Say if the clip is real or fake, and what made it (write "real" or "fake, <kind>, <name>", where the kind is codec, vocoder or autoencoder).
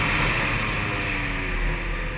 real